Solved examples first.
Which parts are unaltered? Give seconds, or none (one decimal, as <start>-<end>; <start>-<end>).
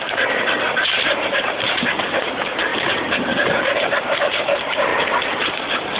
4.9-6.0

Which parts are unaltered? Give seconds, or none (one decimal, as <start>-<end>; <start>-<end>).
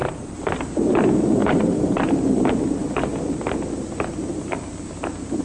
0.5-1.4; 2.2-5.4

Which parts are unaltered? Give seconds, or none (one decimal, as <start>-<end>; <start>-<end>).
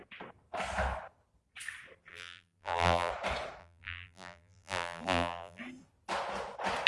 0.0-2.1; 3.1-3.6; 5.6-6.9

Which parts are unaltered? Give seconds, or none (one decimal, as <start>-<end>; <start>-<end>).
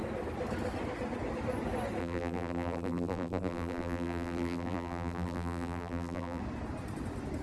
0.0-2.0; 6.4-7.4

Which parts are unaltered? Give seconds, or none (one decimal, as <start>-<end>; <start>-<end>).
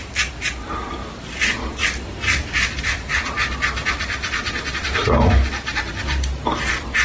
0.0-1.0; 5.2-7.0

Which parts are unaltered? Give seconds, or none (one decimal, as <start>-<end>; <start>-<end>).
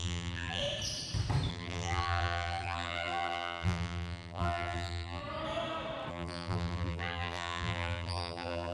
0.6-1.5; 5.2-6.1